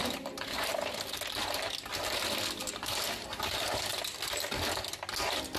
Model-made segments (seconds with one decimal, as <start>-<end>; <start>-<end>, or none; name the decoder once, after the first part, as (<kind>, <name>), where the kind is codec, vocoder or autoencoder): 0.0-0.7 (vocoder, BigVGAN v2); 2.6-4.1